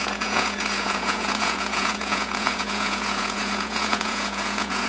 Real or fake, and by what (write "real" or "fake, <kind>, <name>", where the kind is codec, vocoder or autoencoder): fake, vocoder, Vocos